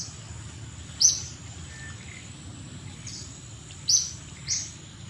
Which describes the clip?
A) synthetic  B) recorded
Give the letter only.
B